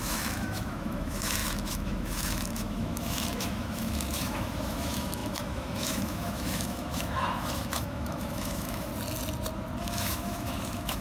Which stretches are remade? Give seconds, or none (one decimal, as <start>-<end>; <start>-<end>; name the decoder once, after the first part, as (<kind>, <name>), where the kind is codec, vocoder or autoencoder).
0.0-8.9 (autoencoder, DAC-VAE); 9.8-11.0